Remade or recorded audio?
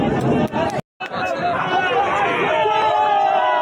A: recorded